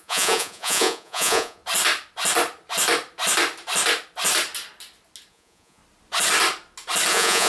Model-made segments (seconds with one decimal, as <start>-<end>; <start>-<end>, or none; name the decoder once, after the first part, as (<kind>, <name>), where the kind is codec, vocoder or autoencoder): 0.0-1.6 (vocoder, Vocos); 5.3-5.8; 7.1-7.5